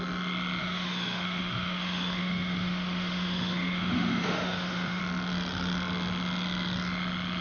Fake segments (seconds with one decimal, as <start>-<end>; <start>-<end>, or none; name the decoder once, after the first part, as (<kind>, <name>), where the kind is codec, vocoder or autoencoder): 0.6-5.0 (autoencoder, DAC-VAE)